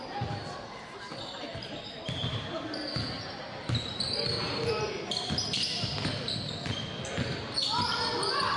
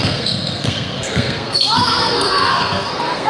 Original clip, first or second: first